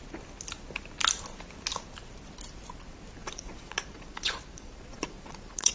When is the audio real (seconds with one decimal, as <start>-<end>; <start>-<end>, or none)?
0.0-3.2